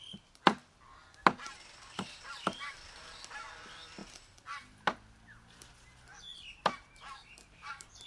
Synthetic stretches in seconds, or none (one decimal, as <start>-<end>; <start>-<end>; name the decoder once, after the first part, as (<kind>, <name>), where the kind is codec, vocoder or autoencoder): 0.0-0.6 (vocoder, BigVGAN v2); 1.5-4.0; 6.6-8.1